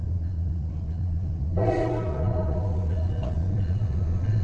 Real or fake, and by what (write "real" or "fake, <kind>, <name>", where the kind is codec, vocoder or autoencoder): fake, vocoder, Vocos